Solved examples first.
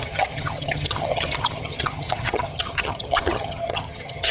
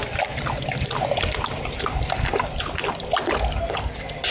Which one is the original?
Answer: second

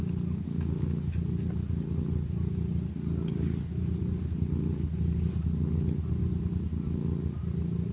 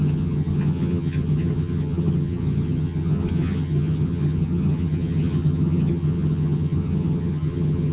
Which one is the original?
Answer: first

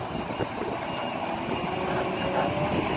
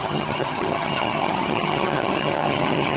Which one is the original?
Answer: first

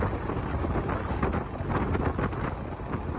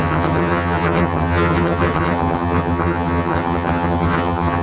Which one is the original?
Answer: first